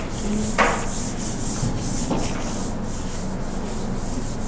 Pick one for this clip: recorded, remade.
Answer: recorded